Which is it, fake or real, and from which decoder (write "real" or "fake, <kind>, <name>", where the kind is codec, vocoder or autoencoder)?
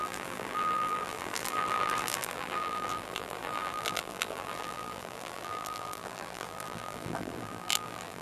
fake, vocoder, BigVGAN v2